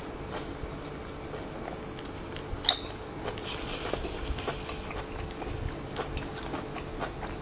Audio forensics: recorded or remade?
recorded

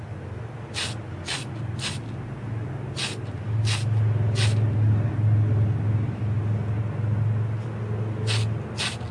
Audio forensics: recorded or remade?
recorded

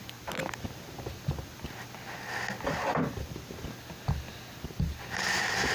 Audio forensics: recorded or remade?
recorded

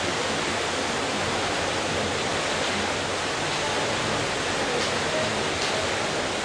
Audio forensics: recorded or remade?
recorded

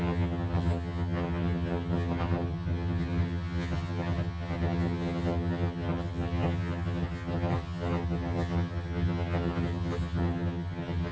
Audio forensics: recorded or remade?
remade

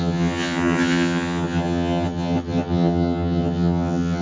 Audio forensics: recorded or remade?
remade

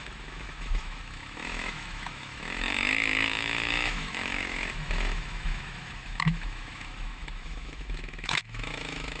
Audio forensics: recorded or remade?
remade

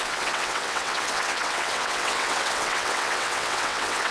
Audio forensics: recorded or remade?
remade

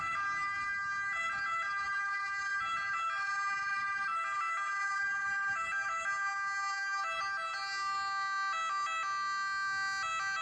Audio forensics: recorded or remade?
recorded